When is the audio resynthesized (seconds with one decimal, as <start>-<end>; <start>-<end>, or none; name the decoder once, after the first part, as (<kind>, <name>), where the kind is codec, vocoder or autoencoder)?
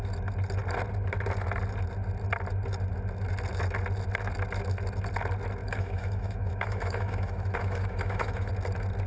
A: 5.6-8.5 (autoencoder, DAC-VAE)